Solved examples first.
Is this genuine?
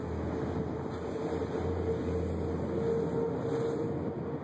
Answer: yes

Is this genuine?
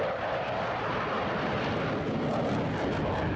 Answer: yes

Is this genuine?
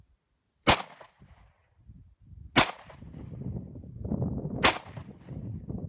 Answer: yes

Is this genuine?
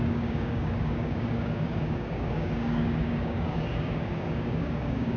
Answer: no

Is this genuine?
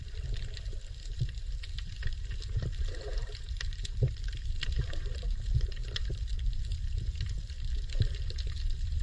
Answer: no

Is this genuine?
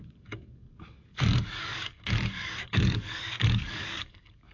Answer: no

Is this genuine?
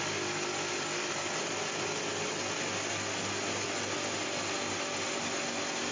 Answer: yes